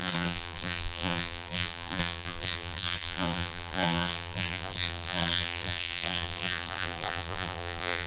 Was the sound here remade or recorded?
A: remade